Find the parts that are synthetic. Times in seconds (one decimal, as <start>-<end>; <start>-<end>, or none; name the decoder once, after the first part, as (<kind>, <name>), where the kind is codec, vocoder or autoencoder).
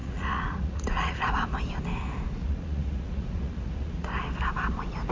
0.0-1.2 (vocoder, Vocos); 2.4-4.1